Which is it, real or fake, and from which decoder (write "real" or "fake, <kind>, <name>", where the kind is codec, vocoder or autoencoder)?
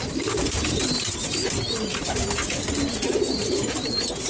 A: real